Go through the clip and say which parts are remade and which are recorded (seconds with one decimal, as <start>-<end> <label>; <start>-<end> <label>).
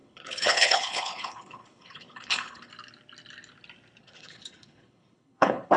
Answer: 0.0-2.7 remade; 2.7-4.0 recorded; 4.0-5.8 remade